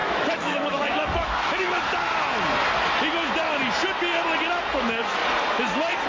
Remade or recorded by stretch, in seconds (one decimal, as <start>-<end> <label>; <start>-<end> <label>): 0.0-1.7 remade; 1.7-4.8 recorded; 4.8-5.2 remade; 5.2-6.1 recorded